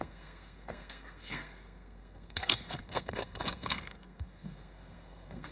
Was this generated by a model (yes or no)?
yes